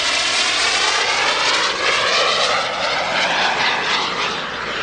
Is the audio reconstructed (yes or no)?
no